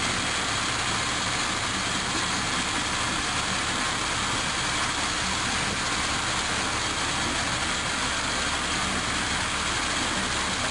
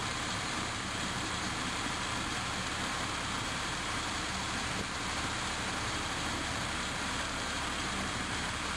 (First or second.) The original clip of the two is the first